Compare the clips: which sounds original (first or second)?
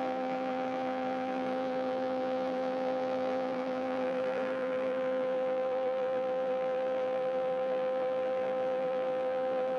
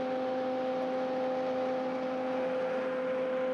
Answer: second